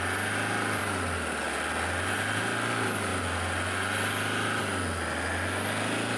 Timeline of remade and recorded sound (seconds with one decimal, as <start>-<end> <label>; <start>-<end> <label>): 0.0-6.2 recorded